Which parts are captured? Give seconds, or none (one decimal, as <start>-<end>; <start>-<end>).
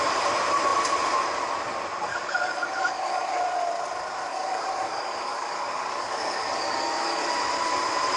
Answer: 0.0-2.1; 3.3-4.3; 7.3-8.2